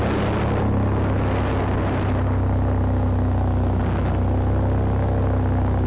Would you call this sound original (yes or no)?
yes